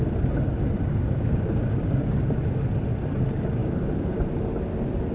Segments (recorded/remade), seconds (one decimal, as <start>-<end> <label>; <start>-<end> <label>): 0.0-0.9 recorded; 0.9-2.1 remade; 2.1-3.6 recorded; 3.6-4.2 remade; 4.2-5.1 recorded